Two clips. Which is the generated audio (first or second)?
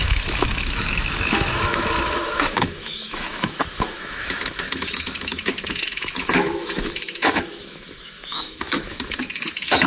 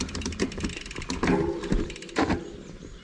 first